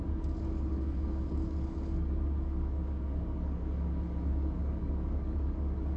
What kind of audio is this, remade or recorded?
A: remade